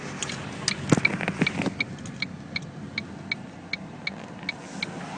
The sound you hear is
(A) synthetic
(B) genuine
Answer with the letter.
B